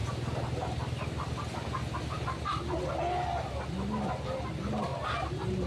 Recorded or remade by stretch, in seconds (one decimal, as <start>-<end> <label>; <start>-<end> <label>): 0.0-5.7 recorded